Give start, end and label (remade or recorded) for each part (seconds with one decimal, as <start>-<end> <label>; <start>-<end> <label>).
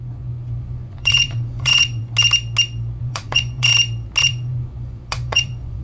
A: 0.0-2.0 remade; 2.0-3.0 recorded; 3.0-3.7 remade; 3.7-4.2 recorded; 4.2-5.8 remade